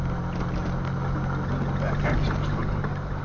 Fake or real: real